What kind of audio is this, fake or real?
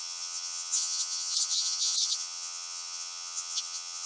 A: fake